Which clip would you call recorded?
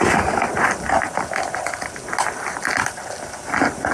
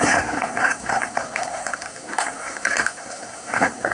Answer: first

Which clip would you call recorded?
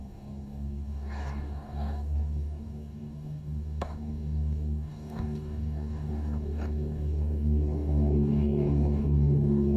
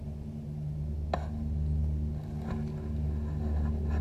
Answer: second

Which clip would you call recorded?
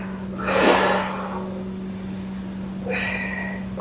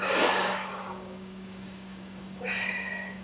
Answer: first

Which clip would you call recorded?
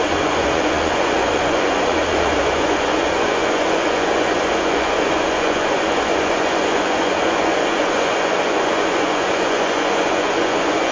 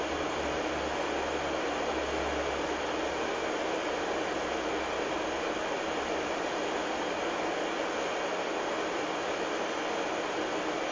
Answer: second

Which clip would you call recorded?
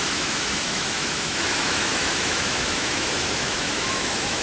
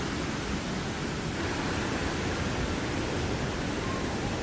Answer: second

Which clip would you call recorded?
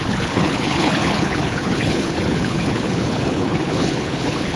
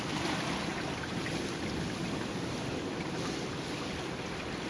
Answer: second